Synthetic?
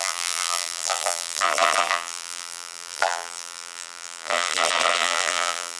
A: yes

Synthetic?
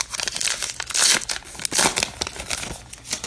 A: no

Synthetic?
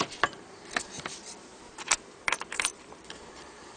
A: yes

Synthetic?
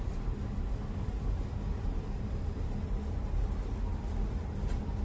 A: yes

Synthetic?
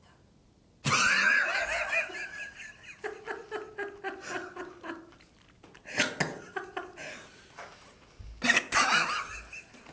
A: no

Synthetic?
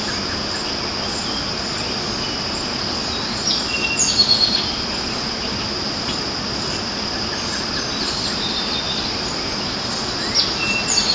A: no